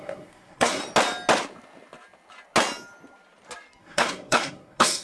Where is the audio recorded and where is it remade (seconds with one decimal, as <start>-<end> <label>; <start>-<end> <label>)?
0.0-0.8 remade; 0.8-3.8 recorded; 3.8-5.0 remade